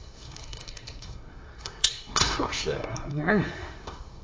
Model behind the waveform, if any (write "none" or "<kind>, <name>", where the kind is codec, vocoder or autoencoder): codec, SNAC